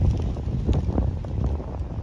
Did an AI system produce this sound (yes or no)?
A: no